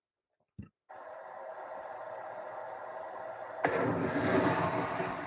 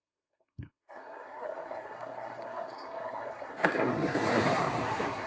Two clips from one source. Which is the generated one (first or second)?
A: second